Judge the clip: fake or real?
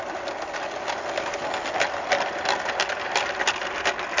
real